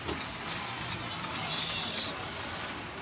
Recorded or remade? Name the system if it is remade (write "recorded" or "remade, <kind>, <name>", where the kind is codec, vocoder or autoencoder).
recorded